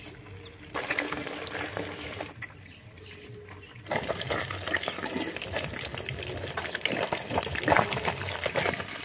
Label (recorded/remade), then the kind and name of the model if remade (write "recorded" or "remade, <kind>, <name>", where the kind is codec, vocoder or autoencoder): remade, vocoder, BigVGAN v2